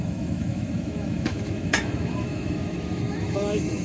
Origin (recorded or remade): remade